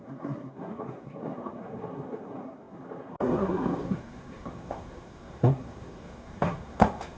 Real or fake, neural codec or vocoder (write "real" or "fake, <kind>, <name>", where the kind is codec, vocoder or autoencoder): fake, codec, SNAC